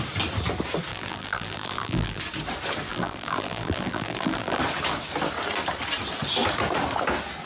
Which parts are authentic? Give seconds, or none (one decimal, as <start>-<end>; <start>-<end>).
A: 0.0-0.9; 2.2-2.9; 4.6-7.5